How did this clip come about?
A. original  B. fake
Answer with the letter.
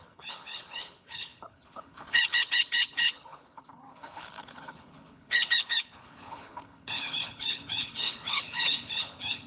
B